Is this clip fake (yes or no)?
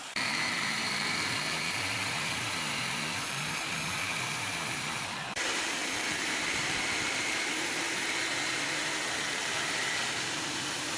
yes